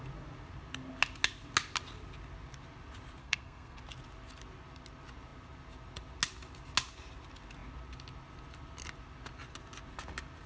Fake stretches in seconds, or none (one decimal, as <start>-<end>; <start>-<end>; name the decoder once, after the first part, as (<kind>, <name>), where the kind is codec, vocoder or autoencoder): 3.2-3.8 (codec, SNAC)